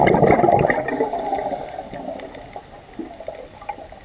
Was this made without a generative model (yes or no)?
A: yes